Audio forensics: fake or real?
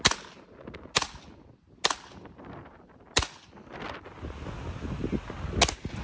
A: real